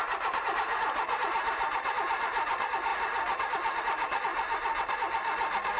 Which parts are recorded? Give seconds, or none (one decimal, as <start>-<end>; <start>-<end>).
4.3-5.8